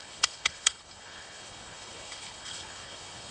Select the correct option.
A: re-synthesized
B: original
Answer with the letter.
A